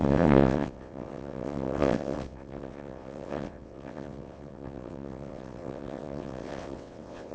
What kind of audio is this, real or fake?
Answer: fake